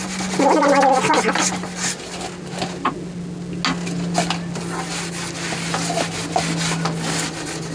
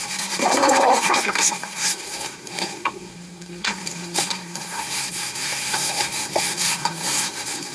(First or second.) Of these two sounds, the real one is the first